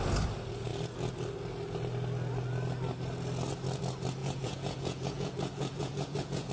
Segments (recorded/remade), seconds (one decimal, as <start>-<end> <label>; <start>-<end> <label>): 0.0-4.2 recorded; 4.2-6.5 remade